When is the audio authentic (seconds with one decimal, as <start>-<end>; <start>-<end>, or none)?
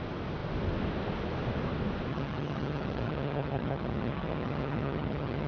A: 0.0-2.1